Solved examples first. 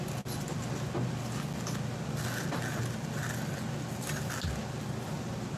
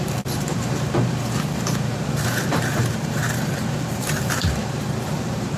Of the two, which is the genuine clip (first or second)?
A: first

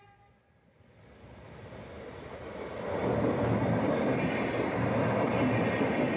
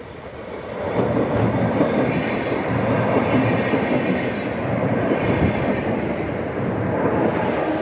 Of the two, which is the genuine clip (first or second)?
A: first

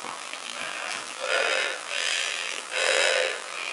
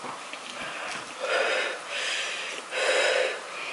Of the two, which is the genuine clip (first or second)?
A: second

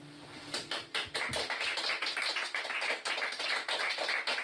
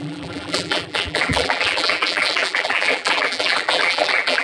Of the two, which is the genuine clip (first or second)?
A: first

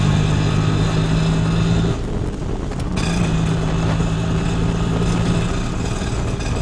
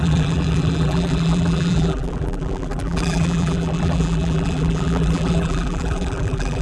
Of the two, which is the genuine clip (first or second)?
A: first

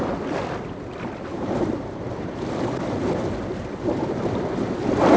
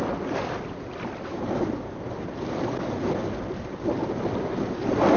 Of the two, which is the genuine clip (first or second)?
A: second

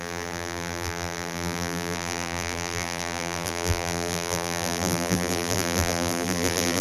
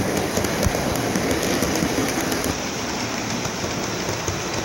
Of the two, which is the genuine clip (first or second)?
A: second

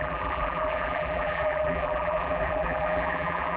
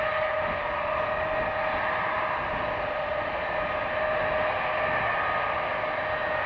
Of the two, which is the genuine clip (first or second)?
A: second